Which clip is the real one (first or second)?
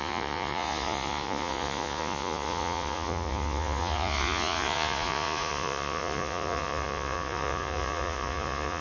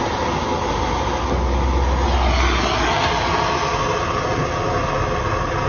second